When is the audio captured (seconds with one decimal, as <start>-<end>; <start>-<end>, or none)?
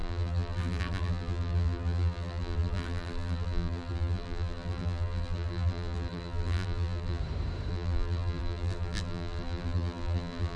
7.2-7.7